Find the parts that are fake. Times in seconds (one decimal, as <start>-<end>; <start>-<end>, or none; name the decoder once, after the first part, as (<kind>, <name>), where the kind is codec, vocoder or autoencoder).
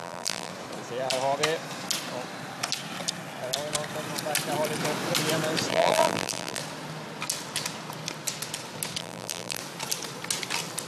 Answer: 0.0-0.5 (vocoder, BigVGAN v2); 5.7-6.6; 9.0-9.6